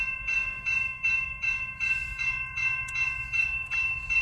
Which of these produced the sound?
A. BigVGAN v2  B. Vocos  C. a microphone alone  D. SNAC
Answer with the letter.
B